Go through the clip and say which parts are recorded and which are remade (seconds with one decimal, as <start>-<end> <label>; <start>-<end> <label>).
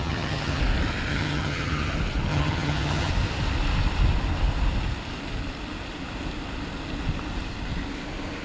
0.0-0.6 remade; 0.6-1.1 recorded; 1.1-1.9 remade; 1.9-2.3 recorded; 2.3-3.1 remade; 3.1-8.4 recorded